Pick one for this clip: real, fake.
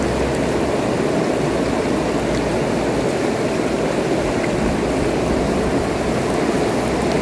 real